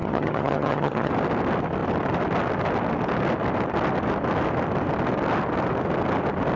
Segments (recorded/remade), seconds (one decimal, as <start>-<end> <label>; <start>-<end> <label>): 0.0-1.1 remade; 1.1-6.6 recorded